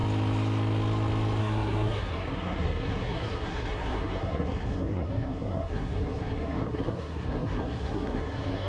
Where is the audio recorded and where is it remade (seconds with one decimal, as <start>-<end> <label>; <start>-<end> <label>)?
0.0-1.4 recorded; 1.4-8.7 remade